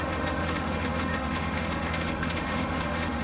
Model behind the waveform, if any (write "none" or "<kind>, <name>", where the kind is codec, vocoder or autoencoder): autoencoder, DAC-VAE